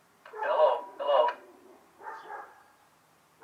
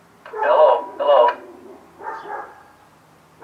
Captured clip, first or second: second